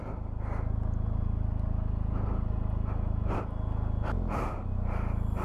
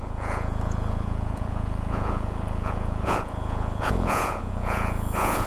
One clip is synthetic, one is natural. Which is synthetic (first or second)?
second